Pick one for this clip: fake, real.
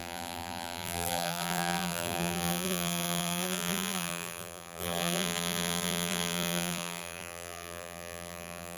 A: fake